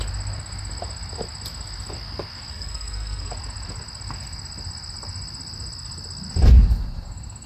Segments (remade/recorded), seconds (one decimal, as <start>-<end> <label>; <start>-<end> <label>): 0.0-2.5 recorded; 2.5-3.3 remade; 3.3-7.5 recorded